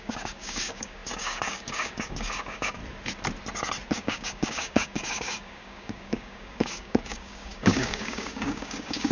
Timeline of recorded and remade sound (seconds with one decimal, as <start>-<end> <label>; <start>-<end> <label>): 0.0-2.8 remade; 2.8-3.9 recorded; 3.9-9.1 remade